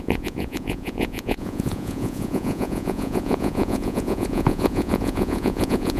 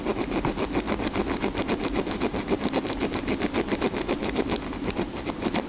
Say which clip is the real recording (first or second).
second